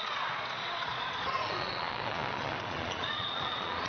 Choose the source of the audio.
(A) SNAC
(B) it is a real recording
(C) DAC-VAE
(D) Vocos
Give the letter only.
D